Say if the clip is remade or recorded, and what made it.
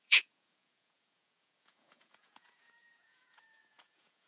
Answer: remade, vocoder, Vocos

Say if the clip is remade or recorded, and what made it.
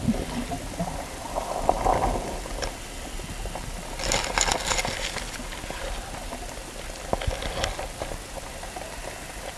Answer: recorded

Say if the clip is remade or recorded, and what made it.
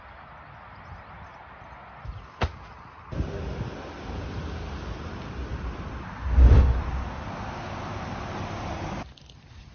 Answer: recorded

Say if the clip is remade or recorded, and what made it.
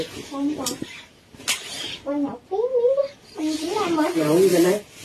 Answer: recorded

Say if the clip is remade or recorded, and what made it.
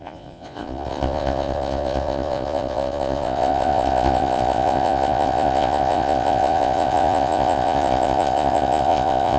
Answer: remade, vocoder, Vocos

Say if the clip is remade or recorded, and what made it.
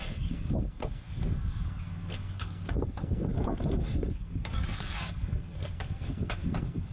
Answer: remade, codec, SNAC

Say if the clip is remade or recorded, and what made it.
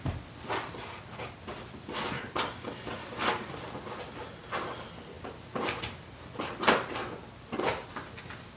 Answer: recorded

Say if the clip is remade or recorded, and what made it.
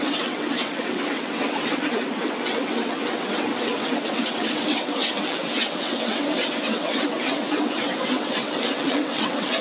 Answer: remade, vocoder, WaveNeXt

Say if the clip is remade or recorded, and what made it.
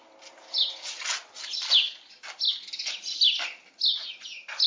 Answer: recorded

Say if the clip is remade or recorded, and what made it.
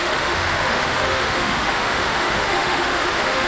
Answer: remade, autoencoder, DAC-VAE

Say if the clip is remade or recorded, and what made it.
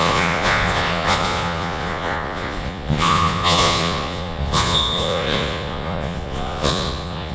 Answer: remade, vocoder, Vocos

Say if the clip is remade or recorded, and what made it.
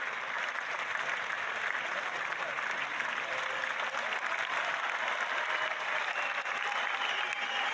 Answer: recorded